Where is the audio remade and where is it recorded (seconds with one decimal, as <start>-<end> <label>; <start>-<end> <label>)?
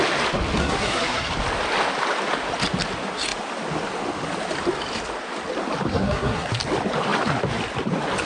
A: 0.0-0.6 recorded; 0.6-1.3 remade; 1.3-5.9 recorded; 5.9-6.5 remade; 6.5-8.3 recorded